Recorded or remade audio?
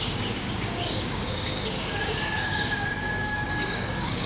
remade